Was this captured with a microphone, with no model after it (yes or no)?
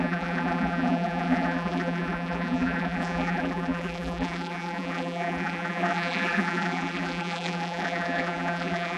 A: no